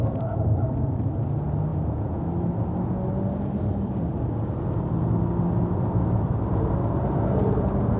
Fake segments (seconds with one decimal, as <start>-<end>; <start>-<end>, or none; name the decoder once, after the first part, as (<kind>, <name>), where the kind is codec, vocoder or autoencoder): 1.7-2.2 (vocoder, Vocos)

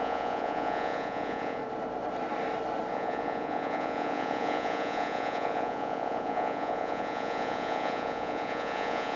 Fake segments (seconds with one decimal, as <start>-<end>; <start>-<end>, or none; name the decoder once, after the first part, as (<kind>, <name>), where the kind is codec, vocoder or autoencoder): 0.0-1.6 (vocoder, Vocos); 2.9-9.2

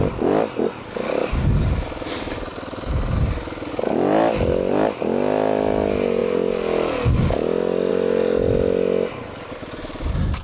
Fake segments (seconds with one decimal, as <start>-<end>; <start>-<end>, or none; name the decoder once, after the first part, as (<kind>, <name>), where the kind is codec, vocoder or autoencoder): none

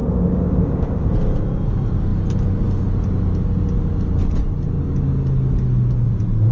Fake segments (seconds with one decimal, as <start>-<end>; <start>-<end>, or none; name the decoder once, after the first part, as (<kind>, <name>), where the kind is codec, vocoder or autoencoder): 0.0-1.1 (codec, ZipCodec)